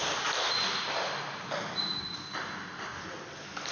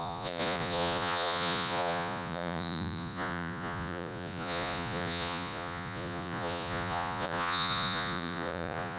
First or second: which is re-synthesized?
second